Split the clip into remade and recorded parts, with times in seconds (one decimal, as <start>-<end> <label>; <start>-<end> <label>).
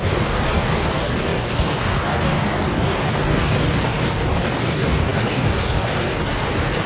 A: 0.0-6.9 remade